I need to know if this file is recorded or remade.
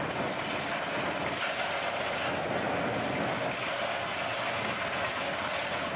recorded